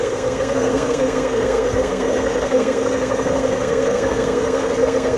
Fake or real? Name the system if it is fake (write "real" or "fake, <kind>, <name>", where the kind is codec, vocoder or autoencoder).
fake, codec, SNAC